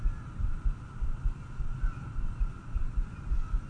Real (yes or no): yes